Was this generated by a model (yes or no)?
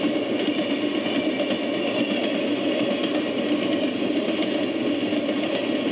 no